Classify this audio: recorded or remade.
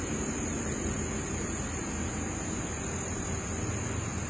recorded